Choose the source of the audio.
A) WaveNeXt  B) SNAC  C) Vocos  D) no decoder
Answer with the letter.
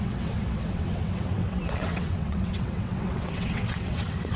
A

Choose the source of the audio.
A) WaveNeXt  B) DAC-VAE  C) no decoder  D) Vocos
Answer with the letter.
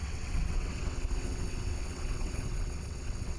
A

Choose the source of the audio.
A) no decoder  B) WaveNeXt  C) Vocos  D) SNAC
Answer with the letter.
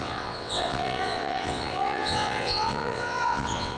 B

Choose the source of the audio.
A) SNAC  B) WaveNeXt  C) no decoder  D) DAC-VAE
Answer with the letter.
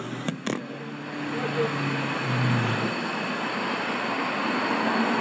C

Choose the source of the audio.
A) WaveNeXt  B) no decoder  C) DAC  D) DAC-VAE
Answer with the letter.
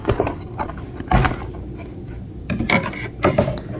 B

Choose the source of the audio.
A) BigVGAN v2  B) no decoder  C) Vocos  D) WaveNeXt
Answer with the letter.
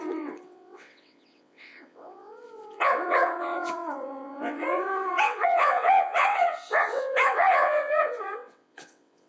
D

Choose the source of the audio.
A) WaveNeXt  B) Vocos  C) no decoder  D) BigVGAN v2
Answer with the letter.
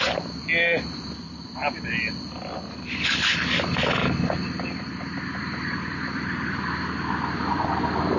C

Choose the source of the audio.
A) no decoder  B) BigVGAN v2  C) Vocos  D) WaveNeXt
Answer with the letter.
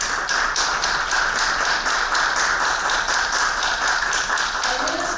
A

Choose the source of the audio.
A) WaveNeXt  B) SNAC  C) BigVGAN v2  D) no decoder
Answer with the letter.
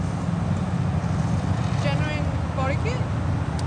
D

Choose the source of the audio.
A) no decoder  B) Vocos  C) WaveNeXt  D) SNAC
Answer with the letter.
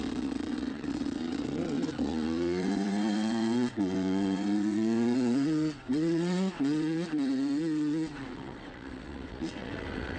C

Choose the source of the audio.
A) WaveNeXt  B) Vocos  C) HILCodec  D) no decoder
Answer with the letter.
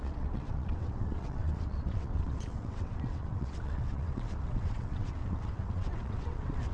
A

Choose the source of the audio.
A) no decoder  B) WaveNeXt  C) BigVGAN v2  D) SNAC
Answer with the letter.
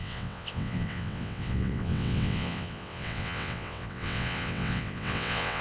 B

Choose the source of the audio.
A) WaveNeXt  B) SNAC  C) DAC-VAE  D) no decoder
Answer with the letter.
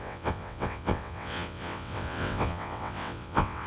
A